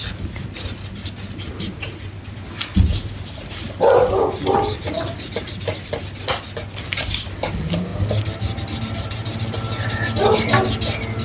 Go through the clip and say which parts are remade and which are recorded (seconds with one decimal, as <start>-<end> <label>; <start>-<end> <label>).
0.0-11.2 recorded